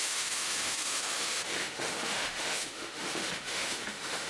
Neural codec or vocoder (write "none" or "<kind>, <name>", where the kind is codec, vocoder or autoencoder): autoencoder, DAC-VAE